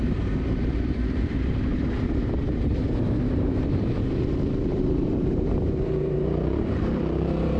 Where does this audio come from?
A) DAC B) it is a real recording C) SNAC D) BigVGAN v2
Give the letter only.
D